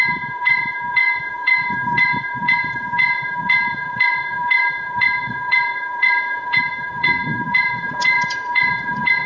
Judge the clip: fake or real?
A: fake